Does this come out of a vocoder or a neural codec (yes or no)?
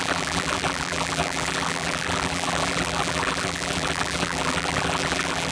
yes